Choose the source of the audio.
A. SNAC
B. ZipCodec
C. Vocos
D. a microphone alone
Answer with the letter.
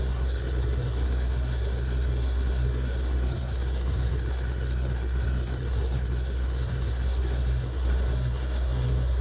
A